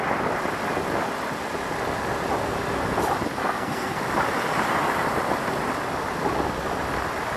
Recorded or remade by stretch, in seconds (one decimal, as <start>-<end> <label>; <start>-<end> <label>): 0.0-3.4 recorded; 3.4-4.0 remade; 4.0-7.4 recorded